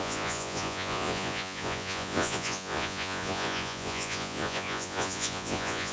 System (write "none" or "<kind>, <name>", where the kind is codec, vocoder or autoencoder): vocoder, Vocos